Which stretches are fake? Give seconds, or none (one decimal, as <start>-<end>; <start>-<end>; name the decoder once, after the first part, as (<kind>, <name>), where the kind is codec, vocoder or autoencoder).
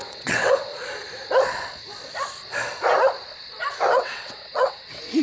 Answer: 0.0-0.7 (vocoder, WaveNeXt); 3.8-5.2